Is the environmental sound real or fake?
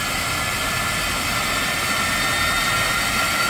real